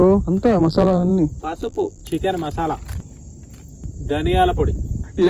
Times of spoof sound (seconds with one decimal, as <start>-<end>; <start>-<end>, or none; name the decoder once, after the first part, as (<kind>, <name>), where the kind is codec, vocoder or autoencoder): 0.6-1.1 (vocoder, BigVGAN v2); 1.6-2.0